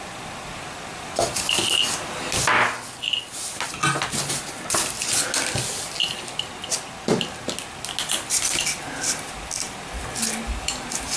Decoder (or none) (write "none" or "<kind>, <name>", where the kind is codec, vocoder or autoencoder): none